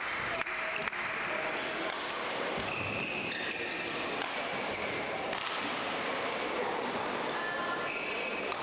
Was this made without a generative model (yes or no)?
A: yes